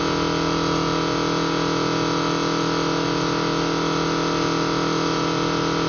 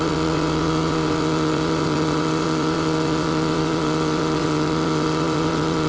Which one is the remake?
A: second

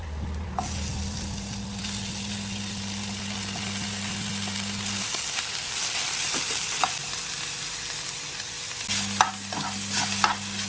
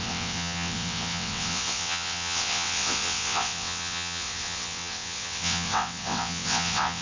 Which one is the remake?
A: second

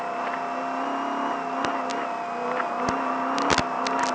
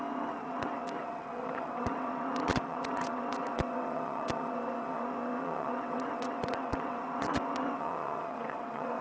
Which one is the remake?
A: second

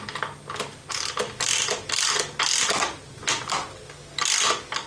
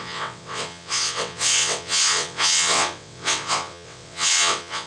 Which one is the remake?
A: second